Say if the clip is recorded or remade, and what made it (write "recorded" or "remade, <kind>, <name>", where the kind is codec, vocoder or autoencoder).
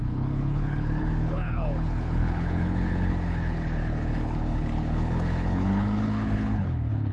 remade, codec, HILCodec